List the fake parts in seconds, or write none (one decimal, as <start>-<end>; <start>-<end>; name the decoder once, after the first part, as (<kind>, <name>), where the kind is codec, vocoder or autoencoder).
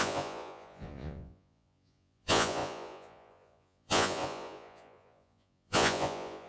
0.0-6.5 (vocoder, Vocos)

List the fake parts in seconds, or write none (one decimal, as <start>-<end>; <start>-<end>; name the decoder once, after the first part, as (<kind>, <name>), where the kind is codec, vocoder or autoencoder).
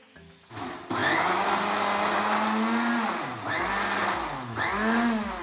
none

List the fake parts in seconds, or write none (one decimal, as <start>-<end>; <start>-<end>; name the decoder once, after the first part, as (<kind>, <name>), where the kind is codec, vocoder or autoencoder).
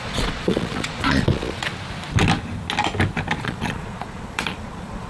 0.0-1.7 (vocoder, Vocos); 3.4-5.1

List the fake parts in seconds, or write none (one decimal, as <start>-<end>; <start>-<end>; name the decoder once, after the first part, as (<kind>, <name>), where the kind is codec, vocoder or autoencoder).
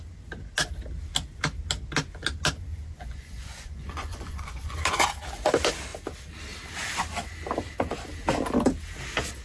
2.7-4.8 (vocoder, Vocos)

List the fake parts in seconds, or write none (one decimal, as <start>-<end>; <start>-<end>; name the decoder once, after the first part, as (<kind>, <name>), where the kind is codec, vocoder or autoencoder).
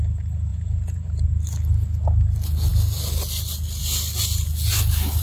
0.5-1.1 (vocoder, Vocos)